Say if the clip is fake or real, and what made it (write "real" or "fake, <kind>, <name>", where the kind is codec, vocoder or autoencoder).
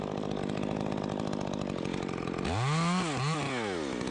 real